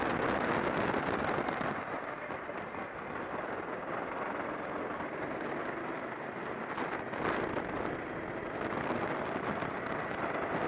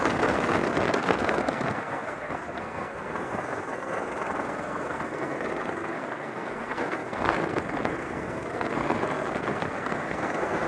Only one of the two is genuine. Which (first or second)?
first